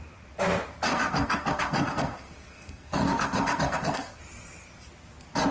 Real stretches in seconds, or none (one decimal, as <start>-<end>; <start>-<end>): 0.0-0.9; 4.2-5.5